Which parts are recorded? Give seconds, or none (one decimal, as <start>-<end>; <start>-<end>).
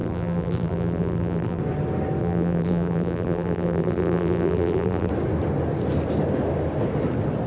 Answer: 1.6-2.2; 5.1-7.5